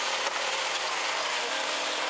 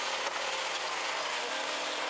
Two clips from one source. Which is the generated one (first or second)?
first